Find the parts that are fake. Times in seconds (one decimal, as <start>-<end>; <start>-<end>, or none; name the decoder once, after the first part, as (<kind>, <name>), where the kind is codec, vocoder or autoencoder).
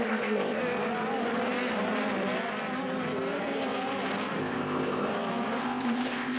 0.0-0.6 (codec, ZipCodec); 4.4-5.1; 5.6-6.4